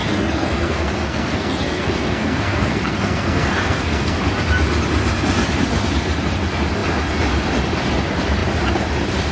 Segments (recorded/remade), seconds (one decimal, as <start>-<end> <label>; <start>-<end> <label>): 0.0-4.2 remade; 4.2-9.3 recorded